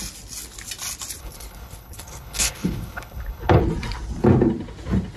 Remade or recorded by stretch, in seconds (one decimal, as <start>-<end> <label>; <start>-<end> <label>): 0.0-1.2 recorded; 1.2-3.6 remade; 3.6-5.2 recorded